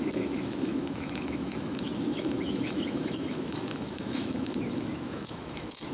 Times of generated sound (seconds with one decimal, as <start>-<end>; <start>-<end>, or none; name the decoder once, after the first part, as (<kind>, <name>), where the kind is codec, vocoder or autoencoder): 0.0-5.9 (autoencoder, DAC-VAE)